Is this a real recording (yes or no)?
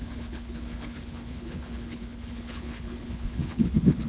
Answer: no